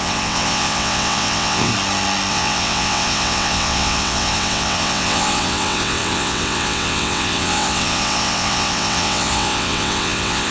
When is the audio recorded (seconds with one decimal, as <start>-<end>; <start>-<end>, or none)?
1.7-2.3

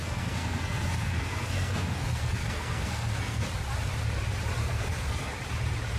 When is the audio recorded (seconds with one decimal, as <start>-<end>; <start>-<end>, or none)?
3.4-4.6; 5.3-6.0

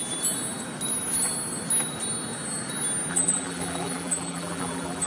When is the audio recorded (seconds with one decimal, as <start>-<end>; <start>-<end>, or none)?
0.0-3.1

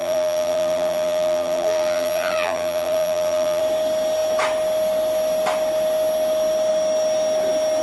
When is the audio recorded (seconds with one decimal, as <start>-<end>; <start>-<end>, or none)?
3.6-7.8

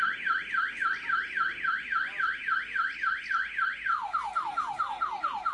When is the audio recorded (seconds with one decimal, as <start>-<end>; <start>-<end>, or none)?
0.0-5.5

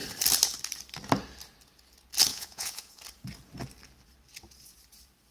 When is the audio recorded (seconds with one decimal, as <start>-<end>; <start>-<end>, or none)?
0.0-2.3; 3.0-5.3